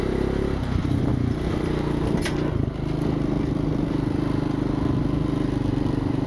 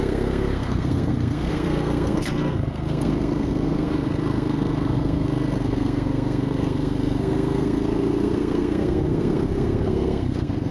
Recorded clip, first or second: first